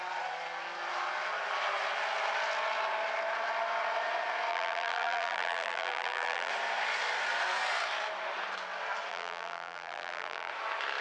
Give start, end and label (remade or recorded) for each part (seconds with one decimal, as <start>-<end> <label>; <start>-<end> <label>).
0.0-4.5 recorded; 4.5-6.5 remade; 6.5-9.1 recorded; 9.1-10.5 remade; 10.5-11.0 recorded